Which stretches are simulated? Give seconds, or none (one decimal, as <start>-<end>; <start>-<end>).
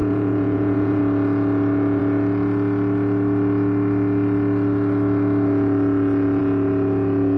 0.0-1.0